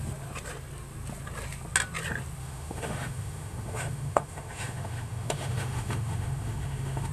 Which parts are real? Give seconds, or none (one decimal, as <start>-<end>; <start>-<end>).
0.0-2.4